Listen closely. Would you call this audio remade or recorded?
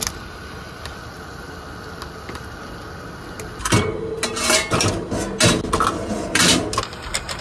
recorded